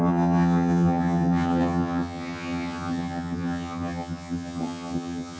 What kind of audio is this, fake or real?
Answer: fake